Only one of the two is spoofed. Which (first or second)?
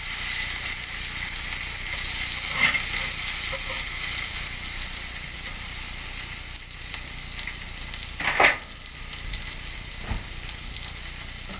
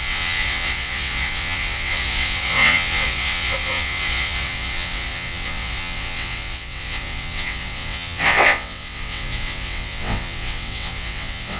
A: second